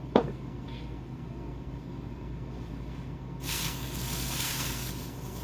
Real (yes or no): no